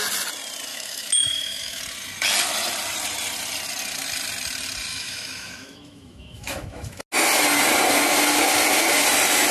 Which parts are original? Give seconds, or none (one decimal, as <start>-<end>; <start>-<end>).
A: 0.0-0.7; 1.8-4.9; 7.0-9.5